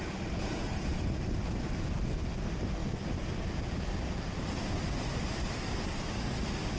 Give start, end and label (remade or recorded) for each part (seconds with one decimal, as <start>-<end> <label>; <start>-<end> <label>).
0.0-6.8 recorded